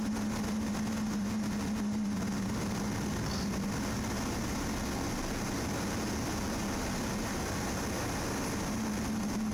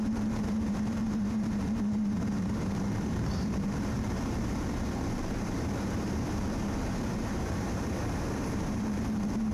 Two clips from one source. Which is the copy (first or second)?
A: second